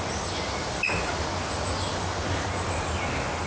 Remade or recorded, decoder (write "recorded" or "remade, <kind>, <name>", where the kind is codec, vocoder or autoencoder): recorded